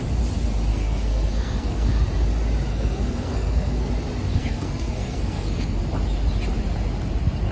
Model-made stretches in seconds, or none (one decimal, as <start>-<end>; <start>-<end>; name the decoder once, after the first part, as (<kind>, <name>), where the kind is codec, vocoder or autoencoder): 0.7-2.0 (codec, SNAC); 2.7-3.9; 4.3-5.8